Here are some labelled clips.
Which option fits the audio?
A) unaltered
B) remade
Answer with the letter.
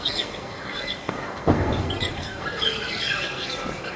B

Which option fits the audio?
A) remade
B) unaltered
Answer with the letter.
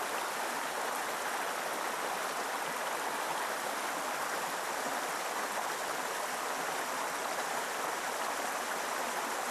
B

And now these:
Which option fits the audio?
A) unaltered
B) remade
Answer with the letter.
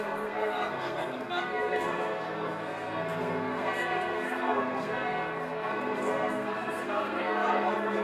B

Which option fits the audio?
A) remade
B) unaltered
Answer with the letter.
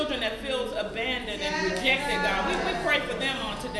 B